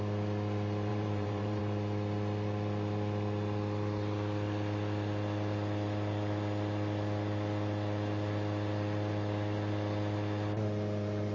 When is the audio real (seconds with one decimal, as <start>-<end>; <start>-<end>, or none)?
0.0-0.9; 1.6-11.3

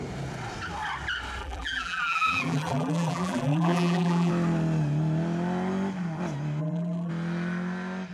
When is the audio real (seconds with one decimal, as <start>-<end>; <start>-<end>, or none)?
0.0-1.4; 4.3-6.6; 7.1-8.1

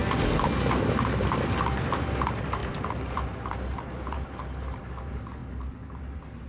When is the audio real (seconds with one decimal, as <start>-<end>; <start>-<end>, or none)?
0.0-0.9

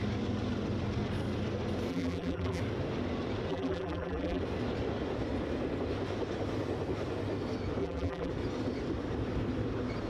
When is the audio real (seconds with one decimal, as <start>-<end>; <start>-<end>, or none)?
0.0-1.9; 2.6-3.5; 4.4-7.8; 8.3-10.1

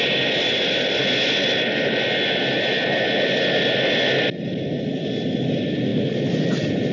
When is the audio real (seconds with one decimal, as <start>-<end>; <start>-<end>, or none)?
0.0-6.9

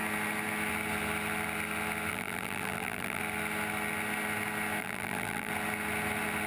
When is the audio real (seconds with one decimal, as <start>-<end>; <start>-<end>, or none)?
0.0-2.1; 3.2-4.8; 5.5-6.5

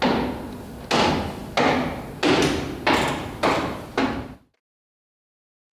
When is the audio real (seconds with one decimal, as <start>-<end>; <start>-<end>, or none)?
0.0-5.7